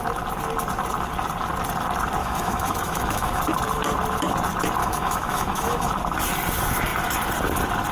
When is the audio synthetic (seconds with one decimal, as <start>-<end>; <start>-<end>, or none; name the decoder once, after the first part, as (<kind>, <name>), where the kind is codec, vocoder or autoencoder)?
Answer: 2.2-3.4 (autoencoder, DAC-VAE); 4.8-5.9